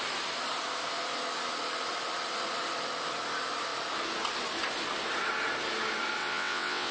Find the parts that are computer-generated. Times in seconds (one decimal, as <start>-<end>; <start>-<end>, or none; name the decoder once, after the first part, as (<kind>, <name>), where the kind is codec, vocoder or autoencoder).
6.2-6.9 (vocoder, WaveNeXt)